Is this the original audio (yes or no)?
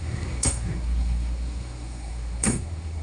no